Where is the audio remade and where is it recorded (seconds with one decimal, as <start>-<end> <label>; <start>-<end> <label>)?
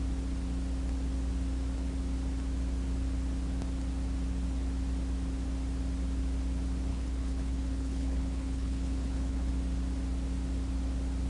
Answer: 0.0-6.9 recorded; 6.9-9.5 remade; 9.5-11.3 recorded